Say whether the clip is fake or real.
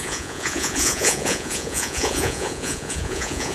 fake